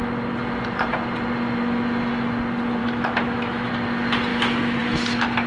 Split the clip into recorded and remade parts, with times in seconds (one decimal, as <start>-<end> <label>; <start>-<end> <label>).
0.0-2.8 recorded; 2.8-3.7 remade; 3.7-4.3 recorded; 4.3-4.8 remade; 4.8-5.5 recorded